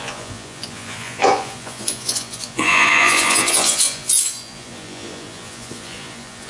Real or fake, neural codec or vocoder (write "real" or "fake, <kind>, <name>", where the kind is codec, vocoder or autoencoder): fake, vocoder, Vocos